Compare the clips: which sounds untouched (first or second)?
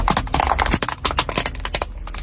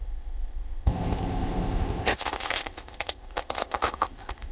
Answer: first